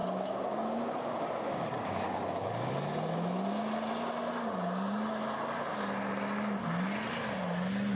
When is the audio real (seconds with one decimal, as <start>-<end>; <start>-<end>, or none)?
2.7-7.9